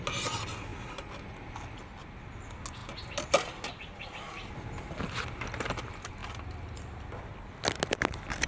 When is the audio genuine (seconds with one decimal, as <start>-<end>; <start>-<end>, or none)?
0.0-8.5